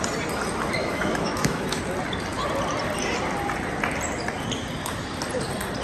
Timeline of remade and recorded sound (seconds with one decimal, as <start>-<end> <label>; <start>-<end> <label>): 0.0-0.8 recorded; 0.8-1.8 remade; 1.8-5.8 recorded